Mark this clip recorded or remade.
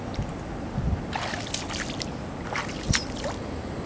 recorded